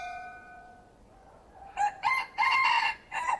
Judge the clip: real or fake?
fake